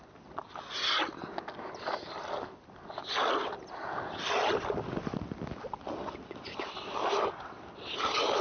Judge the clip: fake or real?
real